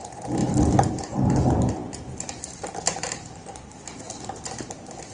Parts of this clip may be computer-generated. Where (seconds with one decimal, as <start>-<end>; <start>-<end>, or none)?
none